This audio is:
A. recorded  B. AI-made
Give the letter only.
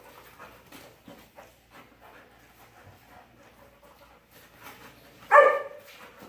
A